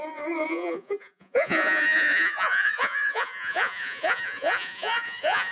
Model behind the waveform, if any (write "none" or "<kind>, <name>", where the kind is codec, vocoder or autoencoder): vocoder, Vocos